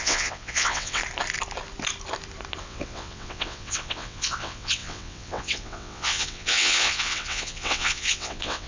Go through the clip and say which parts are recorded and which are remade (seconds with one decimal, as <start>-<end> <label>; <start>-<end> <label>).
0.0-1.0 remade; 1.0-2.6 recorded; 2.6-8.7 remade